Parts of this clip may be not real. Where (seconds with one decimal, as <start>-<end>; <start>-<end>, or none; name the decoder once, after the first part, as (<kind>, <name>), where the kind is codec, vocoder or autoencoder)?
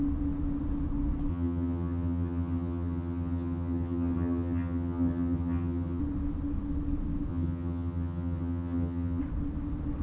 1.3-6.0 (vocoder, HiFi-GAN); 7.3-9.2